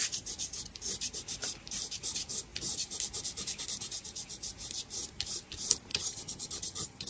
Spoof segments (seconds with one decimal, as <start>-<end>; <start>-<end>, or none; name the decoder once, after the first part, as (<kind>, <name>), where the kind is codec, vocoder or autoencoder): 5.9-7.1 (vocoder, HiFi-GAN)